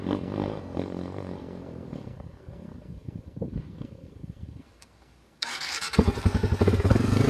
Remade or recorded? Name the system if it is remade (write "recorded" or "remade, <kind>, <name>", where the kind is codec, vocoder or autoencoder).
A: remade, codec, SNAC